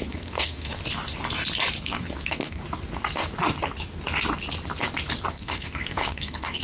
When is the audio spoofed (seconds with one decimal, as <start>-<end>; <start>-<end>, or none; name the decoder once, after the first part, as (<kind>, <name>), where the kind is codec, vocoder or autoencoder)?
0.0-0.8 (codec, SNAC); 1.8-2.6; 5.3-6.6